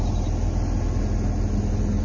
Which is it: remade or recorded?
recorded